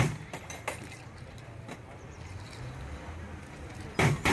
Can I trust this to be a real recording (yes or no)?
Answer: yes